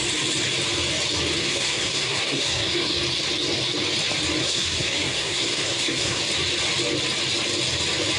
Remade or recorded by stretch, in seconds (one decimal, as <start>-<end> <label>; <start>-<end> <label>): 0.0-1.4 recorded; 1.4-3.0 remade; 3.0-4.4 recorded; 4.4-6.2 remade; 6.2-8.2 recorded